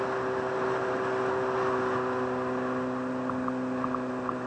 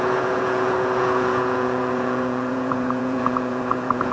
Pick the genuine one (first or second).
first